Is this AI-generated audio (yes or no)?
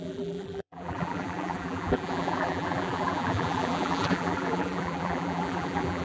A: yes